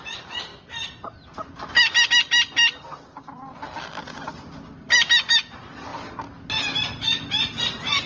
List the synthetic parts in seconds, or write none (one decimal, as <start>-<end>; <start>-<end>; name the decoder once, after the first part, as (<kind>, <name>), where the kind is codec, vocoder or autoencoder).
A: none